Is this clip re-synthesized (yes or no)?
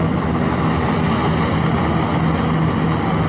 no